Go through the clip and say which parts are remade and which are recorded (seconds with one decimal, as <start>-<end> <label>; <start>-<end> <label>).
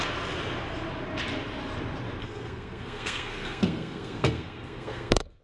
0.0-2.2 recorded; 2.2-5.4 remade